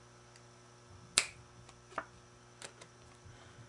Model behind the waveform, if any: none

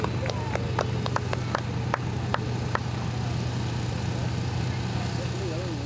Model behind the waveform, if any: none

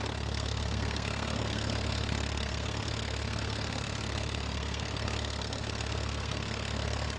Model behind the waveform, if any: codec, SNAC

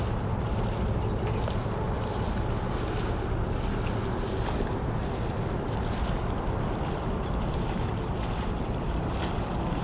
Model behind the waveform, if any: none